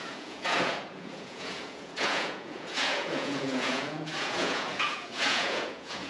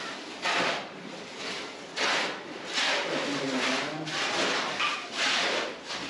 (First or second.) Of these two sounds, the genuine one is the second